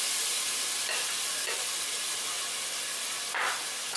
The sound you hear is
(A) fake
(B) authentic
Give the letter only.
B